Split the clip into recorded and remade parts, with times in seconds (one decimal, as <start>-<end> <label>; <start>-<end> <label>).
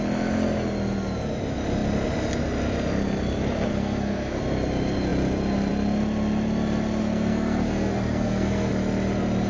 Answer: 0.0-3.7 recorded; 3.7-4.4 remade; 4.4-7.0 recorded; 7.0-8.7 remade; 8.7-9.5 recorded